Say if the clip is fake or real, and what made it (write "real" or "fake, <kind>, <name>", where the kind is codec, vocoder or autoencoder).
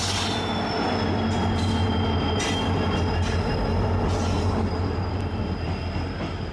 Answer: real